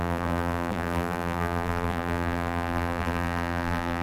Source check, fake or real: fake